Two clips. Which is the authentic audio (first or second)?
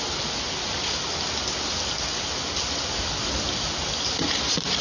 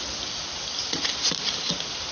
first